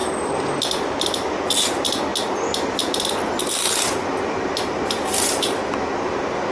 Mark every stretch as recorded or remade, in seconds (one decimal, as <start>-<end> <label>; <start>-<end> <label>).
0.0-6.5 recorded